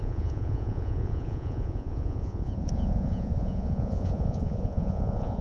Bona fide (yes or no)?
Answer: no